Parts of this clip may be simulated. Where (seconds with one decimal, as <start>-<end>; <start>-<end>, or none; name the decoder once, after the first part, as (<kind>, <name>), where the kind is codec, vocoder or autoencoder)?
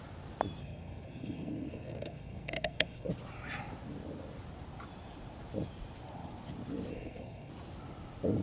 0.6-3.1 (codec, SNAC); 6.9-7.5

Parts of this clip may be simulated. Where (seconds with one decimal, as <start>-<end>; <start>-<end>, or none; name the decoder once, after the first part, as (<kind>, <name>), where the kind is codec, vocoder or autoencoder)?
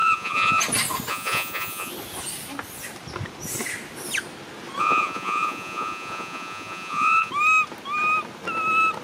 0.0-0.6 (vocoder, Vocos); 1.1-1.9; 4.8-7.3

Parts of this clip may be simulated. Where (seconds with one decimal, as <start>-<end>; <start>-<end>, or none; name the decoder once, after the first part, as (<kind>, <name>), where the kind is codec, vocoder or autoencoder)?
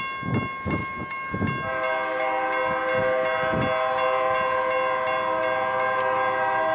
none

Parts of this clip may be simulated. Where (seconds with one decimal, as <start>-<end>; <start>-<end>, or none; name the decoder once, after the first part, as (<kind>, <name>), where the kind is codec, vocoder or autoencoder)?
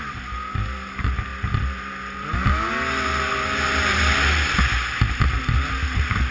none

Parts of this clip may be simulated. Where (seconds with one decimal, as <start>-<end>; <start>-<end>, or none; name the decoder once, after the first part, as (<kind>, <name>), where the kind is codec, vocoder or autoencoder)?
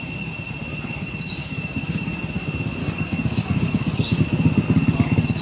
1.4-2.2 (codec, DAC); 2.8-4.2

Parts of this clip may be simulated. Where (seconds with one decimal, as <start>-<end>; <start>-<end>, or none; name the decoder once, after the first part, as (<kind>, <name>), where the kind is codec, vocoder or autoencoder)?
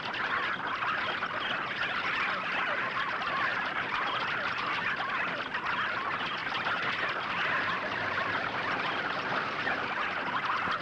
3.5-4.2 (vocoder, BigVGAN v2)